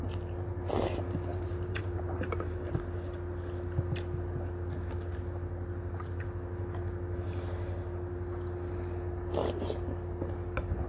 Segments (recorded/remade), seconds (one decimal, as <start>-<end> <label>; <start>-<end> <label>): 0.0-1.3 recorded; 1.3-2.8 remade; 2.8-10.9 recorded